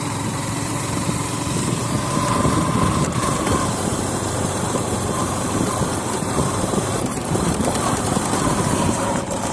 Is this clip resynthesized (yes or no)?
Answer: yes